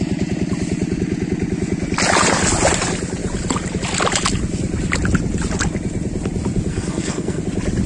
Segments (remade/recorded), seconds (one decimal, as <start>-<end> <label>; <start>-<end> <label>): 0.0-6.7 recorded; 6.7-7.4 remade; 7.4-7.9 recorded